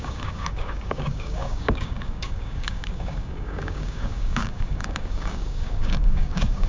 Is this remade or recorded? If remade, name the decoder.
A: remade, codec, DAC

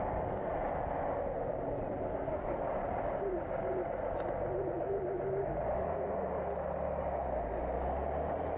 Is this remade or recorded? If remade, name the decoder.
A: recorded